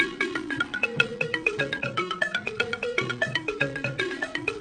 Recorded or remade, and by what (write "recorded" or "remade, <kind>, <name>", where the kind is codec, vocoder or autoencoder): remade, vocoder, Vocos